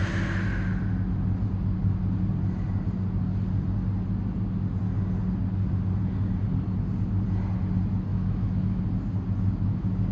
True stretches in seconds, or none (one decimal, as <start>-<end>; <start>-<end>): 0.0-8.1; 8.8-10.1